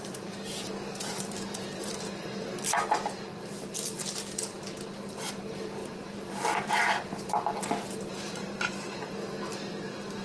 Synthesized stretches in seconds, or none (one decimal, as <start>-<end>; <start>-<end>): 0.0-1.9; 5.3-8.9